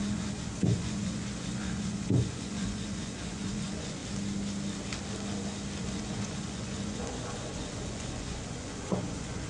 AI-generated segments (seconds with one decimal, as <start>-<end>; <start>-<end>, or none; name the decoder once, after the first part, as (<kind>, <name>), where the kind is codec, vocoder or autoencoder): 0.0-4.0 (vocoder, Vocos); 5.8-9.5